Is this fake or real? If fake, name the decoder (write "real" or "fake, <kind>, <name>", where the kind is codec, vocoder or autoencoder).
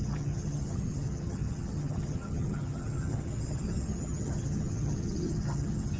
fake, vocoder, HiFi-GAN